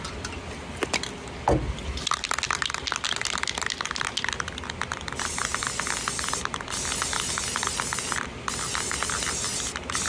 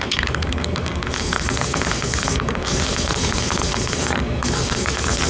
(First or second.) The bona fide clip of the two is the first